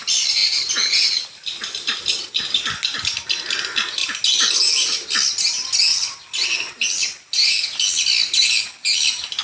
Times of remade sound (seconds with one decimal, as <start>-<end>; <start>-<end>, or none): none